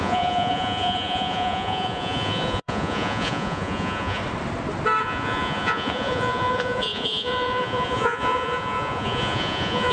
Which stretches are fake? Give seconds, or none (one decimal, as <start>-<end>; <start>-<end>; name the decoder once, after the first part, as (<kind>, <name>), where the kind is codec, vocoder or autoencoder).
0.0-4.2 (vocoder, Vocos); 5.0-9.9